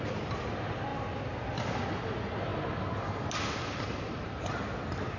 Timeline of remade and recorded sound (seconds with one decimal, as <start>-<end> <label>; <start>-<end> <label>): 0.0-5.2 recorded